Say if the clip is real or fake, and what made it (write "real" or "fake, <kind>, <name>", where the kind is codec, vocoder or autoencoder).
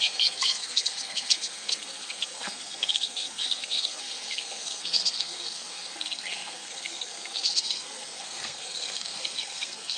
fake, codec, SNAC